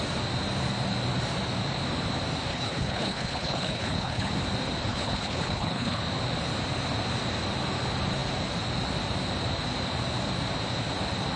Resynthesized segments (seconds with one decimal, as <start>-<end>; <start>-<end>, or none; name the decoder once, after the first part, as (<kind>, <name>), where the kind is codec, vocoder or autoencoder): 2.5-4.3 (codec, HILCodec); 4.9-6.0